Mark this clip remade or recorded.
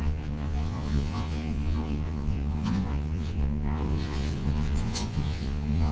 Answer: remade